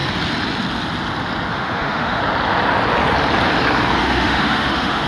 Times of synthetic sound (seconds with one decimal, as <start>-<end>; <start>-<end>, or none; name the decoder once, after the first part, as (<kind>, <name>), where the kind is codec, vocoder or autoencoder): 1.5-2.2 (autoencoder, DAC-VAE); 4.0-5.1